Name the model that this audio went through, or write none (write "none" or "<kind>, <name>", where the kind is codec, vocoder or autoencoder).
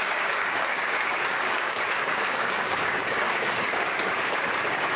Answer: codec, DAC